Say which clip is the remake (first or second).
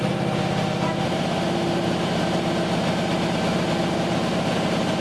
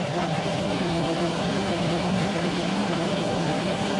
second